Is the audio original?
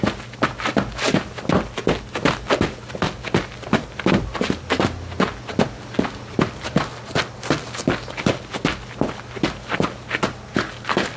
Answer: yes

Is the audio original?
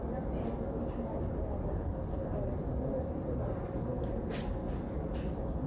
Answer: yes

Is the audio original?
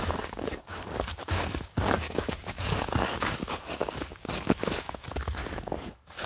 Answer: no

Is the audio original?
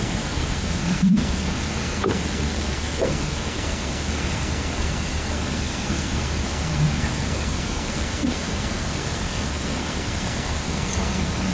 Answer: no